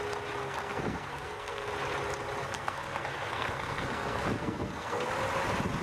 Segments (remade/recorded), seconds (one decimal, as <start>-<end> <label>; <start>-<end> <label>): 0.0-0.4 recorded; 0.4-1.7 remade; 1.7-2.4 recorded; 2.4-5.1 remade; 5.1-5.8 recorded